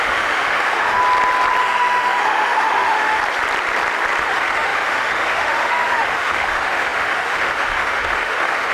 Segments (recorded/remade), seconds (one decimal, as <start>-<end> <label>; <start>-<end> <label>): 0.0-1.0 remade; 1.0-1.6 recorded; 1.6-3.2 remade; 3.2-4.2 recorded; 4.2-8.7 remade